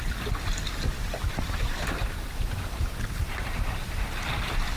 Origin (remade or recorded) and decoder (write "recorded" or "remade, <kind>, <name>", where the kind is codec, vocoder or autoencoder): recorded